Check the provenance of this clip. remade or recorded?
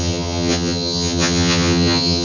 remade